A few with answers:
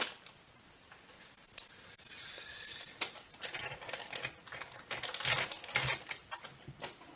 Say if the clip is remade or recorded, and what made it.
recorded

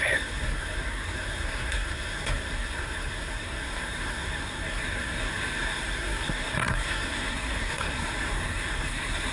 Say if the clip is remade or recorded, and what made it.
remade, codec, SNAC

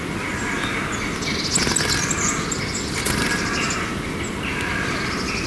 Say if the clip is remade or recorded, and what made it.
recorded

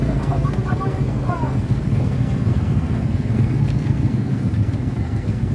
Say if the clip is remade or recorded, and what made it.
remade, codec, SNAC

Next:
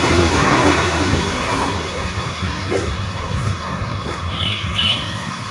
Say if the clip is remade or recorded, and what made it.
remade, codec, SNAC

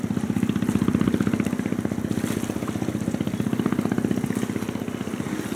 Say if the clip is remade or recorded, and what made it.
recorded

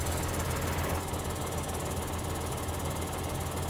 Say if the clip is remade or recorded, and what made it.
recorded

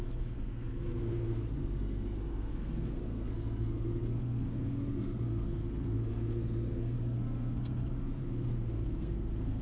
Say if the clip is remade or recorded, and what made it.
remade, codec, SNAC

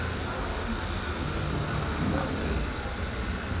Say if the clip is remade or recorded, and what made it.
recorded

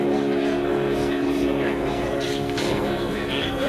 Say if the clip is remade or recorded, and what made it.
remade, codec, SNAC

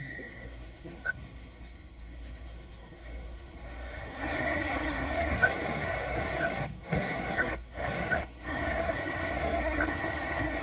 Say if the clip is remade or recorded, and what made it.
remade, codec, SNAC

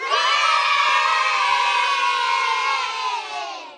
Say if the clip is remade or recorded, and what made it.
recorded